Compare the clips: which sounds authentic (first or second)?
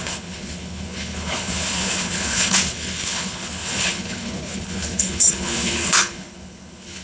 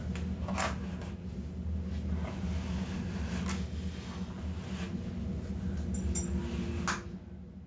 second